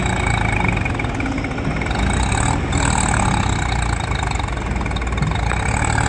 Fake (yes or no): no